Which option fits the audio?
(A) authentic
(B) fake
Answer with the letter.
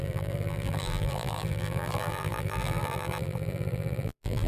B